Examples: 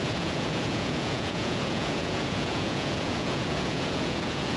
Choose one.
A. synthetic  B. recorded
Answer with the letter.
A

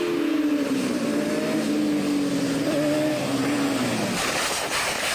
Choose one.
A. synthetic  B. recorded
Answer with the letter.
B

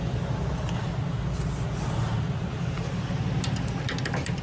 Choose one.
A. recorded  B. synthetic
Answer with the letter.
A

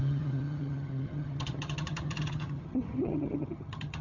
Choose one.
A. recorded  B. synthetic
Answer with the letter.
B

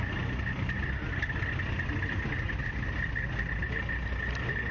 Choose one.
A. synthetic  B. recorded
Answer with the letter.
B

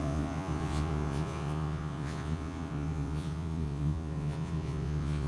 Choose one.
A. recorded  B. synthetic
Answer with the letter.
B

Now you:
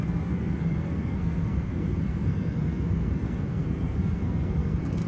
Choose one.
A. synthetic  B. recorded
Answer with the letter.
A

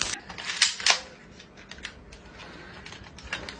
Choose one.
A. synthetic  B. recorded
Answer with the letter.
B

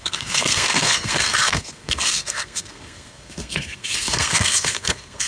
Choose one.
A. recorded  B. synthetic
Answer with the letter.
B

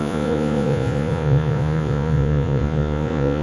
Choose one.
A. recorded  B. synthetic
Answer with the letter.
B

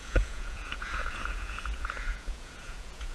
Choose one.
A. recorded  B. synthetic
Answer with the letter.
B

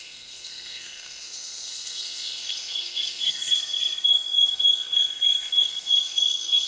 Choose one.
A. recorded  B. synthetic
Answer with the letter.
B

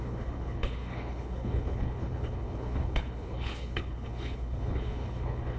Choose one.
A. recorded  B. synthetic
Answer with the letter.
B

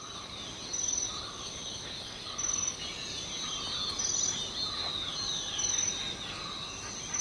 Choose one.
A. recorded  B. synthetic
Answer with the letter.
A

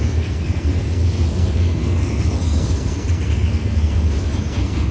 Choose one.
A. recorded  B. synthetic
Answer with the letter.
B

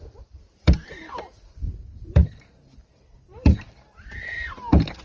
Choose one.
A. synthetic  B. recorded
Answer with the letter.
A